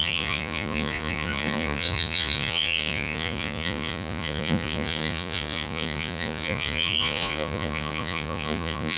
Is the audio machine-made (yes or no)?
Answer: yes